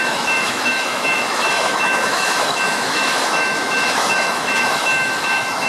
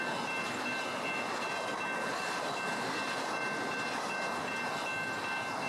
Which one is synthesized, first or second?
first